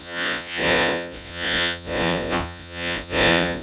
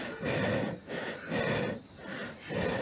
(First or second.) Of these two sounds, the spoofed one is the first